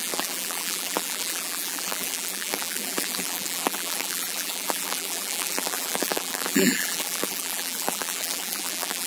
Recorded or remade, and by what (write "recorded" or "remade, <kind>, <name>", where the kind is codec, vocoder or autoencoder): remade, vocoder, BigVGAN v2